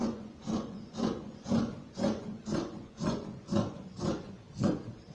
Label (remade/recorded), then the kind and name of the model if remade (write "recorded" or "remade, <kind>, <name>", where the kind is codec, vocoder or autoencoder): remade, vocoder, Vocos